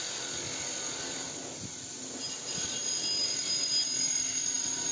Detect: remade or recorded recorded